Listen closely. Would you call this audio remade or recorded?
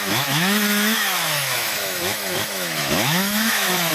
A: remade